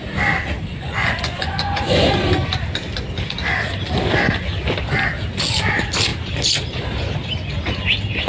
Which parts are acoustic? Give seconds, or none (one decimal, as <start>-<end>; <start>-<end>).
0.0-0.7; 2.1-8.3